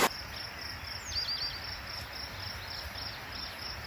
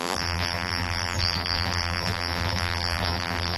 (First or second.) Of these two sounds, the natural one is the first